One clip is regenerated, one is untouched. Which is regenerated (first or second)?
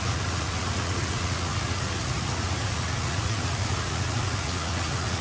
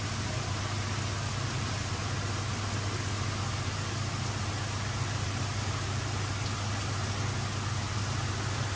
first